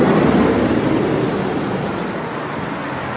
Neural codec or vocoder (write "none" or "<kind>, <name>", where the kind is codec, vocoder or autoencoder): none